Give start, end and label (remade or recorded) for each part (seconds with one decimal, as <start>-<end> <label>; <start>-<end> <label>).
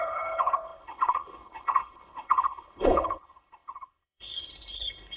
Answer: 0.0-5.2 remade